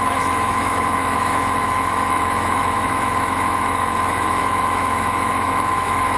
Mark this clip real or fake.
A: fake